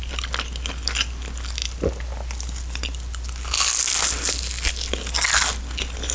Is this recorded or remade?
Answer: recorded